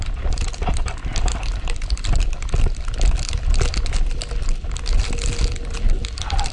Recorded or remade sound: recorded